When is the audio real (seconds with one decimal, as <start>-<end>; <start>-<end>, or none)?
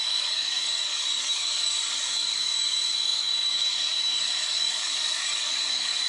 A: none